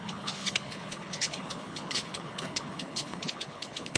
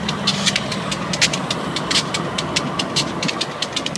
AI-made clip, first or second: first